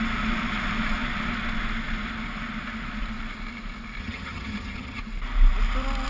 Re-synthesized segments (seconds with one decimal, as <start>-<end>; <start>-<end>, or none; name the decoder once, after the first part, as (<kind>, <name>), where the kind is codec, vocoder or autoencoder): 4.0-5.0 (vocoder, HiFi-GAN)